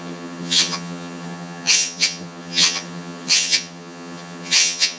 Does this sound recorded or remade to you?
remade